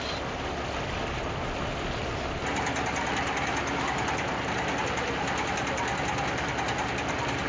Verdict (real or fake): real